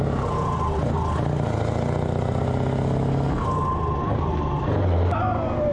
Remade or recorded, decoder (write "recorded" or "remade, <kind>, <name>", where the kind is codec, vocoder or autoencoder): recorded